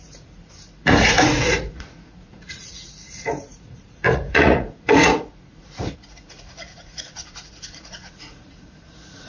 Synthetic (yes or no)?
yes